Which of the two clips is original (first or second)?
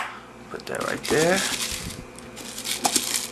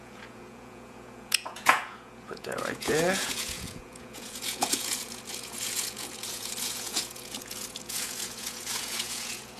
first